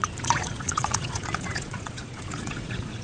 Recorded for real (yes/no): no